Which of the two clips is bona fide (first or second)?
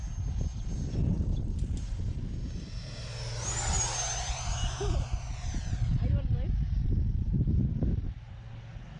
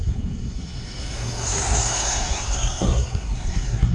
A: first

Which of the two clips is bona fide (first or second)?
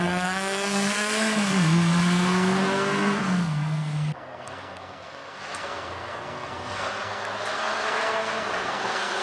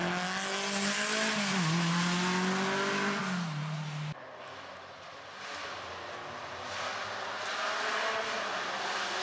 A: second